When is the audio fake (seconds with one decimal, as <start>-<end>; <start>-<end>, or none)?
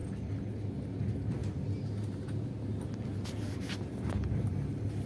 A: none